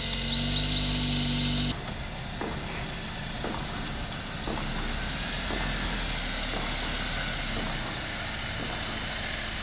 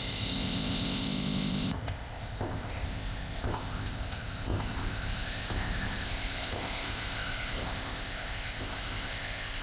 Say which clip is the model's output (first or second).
second